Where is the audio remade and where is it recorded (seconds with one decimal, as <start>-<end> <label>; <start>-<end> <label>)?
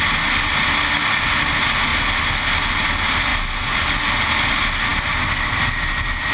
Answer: 0.0-6.3 recorded